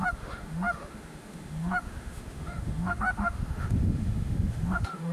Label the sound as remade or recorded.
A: remade